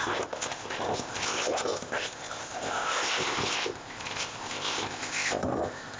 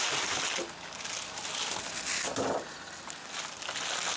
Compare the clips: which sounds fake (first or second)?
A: first